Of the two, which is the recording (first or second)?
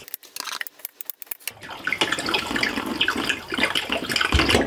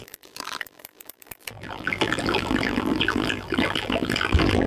first